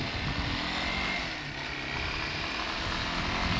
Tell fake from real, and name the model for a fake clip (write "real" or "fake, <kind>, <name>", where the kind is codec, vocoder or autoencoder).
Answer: real